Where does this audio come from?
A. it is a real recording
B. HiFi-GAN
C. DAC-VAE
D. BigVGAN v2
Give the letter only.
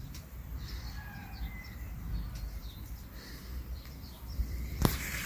D